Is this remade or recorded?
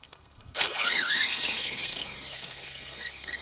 remade